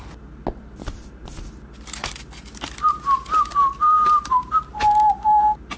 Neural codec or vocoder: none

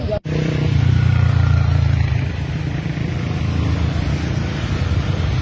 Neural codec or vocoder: vocoder, BigVGAN v2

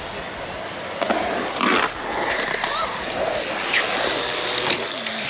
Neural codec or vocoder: none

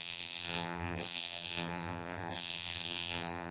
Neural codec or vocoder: vocoder, BigVGAN v2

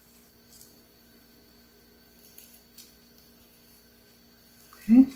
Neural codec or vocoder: none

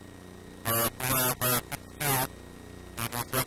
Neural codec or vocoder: none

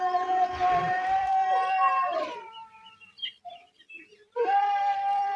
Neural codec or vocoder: vocoder, BigVGAN v2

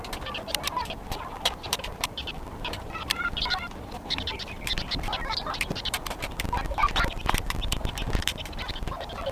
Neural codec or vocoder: vocoder, BigVGAN v2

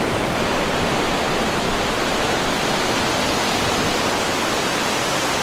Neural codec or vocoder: none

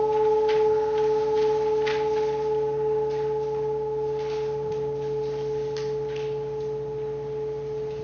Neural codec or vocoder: none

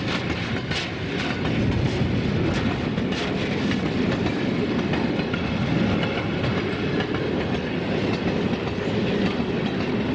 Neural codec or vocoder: none